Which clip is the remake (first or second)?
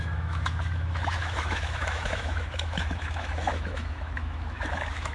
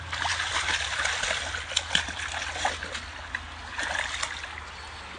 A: first